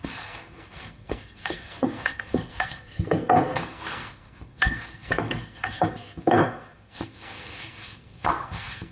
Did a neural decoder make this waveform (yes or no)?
yes